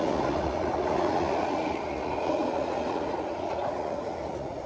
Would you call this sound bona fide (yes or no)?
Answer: no